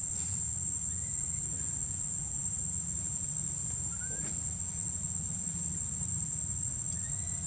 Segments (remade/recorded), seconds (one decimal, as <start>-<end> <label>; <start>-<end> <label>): 0.0-3.6 remade; 3.6-4.2 recorded; 4.2-7.5 remade